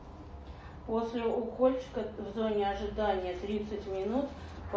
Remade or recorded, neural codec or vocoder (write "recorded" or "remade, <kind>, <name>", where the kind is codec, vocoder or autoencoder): recorded